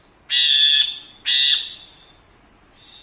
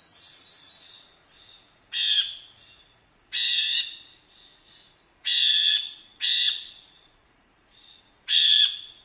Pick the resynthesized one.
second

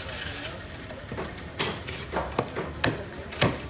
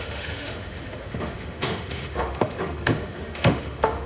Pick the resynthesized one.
second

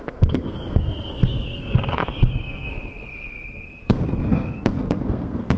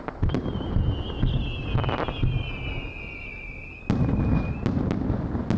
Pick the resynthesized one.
first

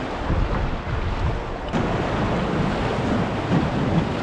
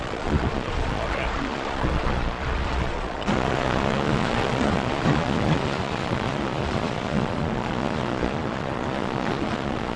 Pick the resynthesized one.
second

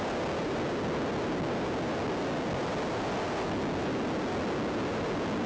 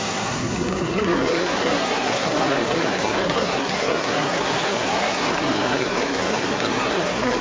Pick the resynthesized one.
second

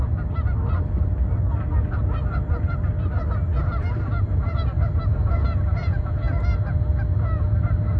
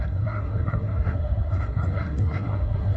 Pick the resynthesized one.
second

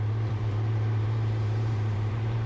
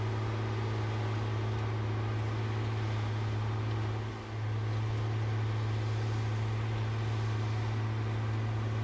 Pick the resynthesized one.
first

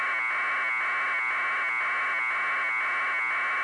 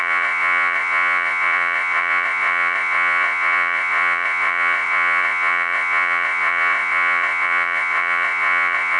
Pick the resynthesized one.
second